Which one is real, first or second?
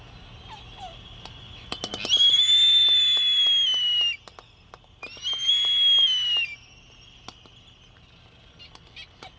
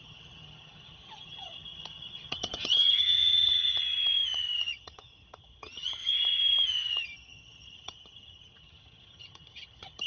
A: first